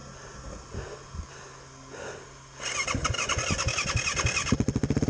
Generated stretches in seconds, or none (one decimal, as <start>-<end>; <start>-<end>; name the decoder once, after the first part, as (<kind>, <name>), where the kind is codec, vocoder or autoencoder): none